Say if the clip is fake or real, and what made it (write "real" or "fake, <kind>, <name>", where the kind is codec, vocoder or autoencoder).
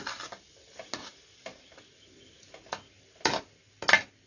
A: real